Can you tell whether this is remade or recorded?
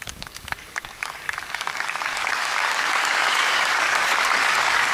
remade